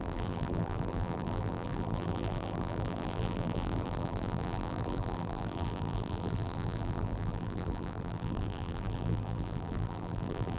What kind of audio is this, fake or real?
fake